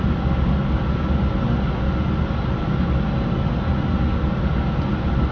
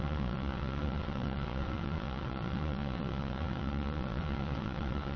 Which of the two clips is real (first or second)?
first